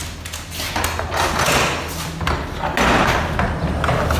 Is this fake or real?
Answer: real